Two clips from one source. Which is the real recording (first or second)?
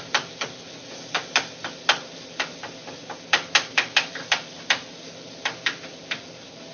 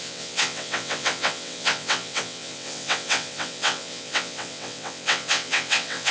first